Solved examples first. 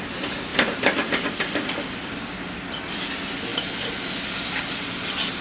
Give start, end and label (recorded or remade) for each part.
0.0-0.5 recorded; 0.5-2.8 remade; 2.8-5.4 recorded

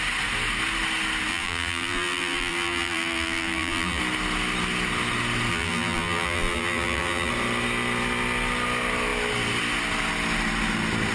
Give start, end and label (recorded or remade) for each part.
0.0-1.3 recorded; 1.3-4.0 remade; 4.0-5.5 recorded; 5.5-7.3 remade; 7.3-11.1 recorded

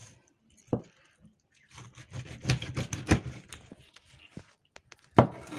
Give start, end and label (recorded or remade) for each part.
0.0-5.6 recorded

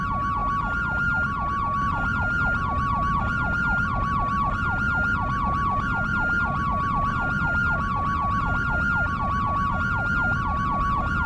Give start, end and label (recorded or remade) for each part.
0.0-11.3 recorded